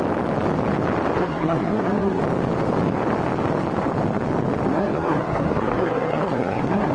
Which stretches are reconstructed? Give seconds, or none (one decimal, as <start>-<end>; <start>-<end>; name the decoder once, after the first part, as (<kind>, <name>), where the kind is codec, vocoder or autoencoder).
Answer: 1.2-2.2 (codec, SNAC); 4.7-6.9